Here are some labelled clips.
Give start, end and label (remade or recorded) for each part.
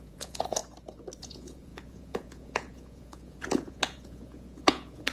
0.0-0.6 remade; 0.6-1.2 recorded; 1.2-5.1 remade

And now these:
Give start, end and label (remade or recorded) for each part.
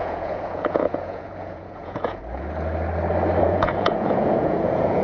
0.0-2.2 remade; 2.2-3.4 recorded; 3.4-5.0 remade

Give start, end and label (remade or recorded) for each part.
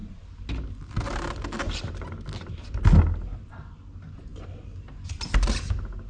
0.0-6.1 recorded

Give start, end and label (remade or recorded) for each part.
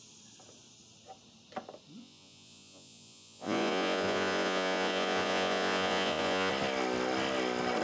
0.0-2.0 recorded; 2.0-6.5 remade; 6.5-7.8 recorded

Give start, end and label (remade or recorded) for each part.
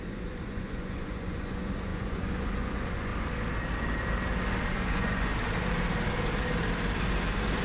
0.0-3.1 remade; 3.1-4.7 recorded; 4.7-5.3 remade; 5.3-7.6 recorded